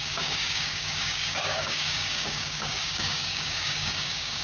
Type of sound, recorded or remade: remade